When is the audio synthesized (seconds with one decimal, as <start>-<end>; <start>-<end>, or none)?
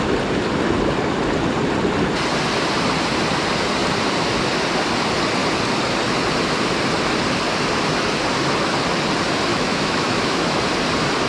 9.5-10.6